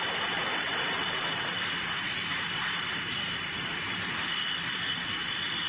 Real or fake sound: fake